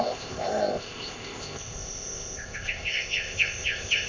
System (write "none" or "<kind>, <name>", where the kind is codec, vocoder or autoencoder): codec, ZipCodec